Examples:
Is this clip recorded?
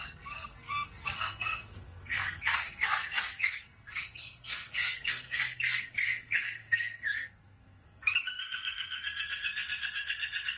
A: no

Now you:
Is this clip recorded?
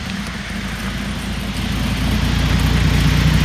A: yes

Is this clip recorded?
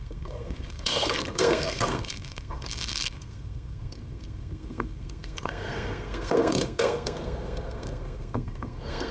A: no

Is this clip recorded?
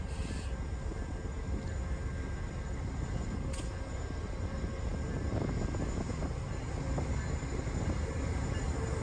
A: yes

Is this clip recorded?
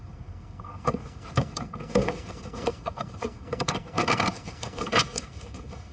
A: no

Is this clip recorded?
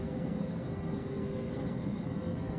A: no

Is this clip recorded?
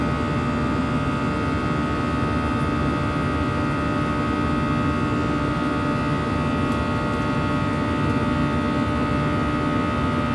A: yes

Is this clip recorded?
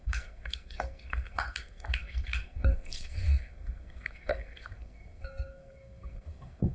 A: no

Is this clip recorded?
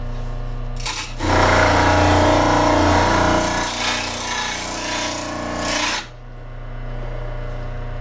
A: yes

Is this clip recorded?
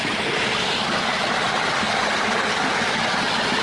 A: yes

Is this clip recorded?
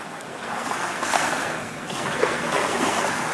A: no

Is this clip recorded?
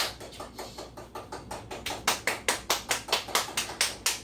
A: yes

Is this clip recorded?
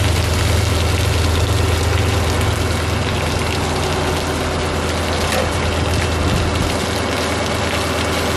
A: yes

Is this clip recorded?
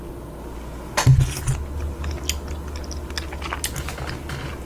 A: yes